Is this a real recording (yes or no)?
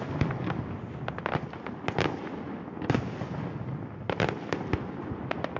yes